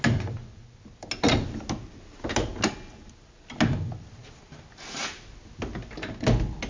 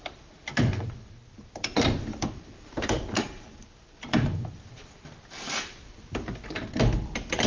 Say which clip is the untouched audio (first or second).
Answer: first